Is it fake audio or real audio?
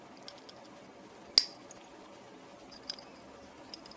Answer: real